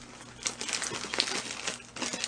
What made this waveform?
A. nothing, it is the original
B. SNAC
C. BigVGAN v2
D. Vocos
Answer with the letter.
A